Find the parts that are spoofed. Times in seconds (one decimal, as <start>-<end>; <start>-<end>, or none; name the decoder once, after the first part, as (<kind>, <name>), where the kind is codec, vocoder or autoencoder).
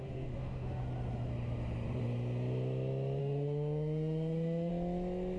0.0-0.8 (autoencoder, DAC-VAE); 3.2-4.7